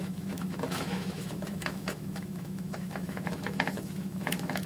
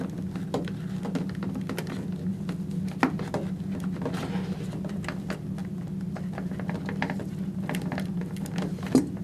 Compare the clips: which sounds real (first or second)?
second